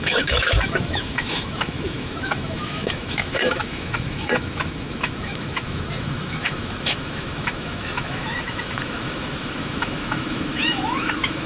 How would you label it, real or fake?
fake